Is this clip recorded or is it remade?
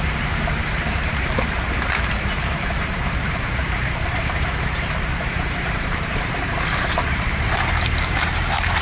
remade